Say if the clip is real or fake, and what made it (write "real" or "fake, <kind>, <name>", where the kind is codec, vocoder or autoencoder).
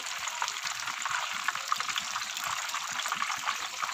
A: real